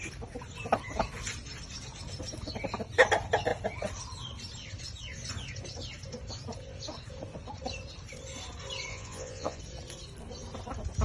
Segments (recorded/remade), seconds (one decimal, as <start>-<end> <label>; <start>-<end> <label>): 0.0-8.9 recorded; 8.9-9.6 remade; 9.6-11.0 recorded